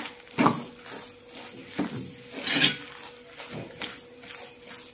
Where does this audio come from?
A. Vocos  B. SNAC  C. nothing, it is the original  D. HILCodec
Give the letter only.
C